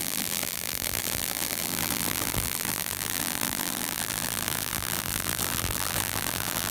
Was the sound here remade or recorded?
remade